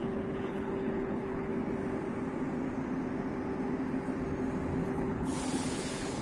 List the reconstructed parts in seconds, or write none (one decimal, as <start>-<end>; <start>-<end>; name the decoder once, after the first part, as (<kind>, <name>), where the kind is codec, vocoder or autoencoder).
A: 0.0-1.5 (codec, HILCodec); 4.9-6.2